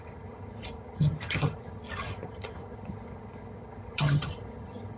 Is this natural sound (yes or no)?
no